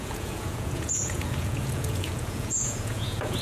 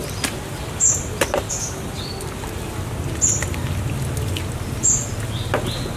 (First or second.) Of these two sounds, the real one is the second